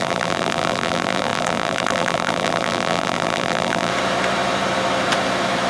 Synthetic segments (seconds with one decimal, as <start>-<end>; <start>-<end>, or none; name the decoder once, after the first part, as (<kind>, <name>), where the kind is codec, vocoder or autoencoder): 0.0-3.9 (vocoder, BigVGAN v2)